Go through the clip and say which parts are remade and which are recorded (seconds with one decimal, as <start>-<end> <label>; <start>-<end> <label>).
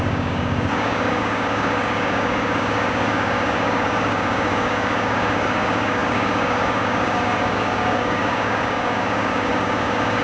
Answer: 0.0-10.2 remade